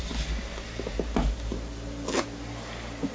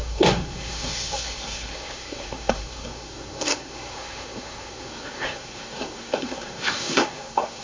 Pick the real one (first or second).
first